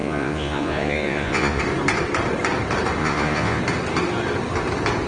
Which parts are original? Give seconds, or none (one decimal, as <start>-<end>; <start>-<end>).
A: 1.6-3.0; 3.6-5.1